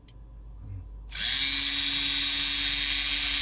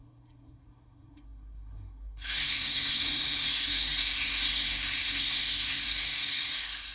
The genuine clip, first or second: first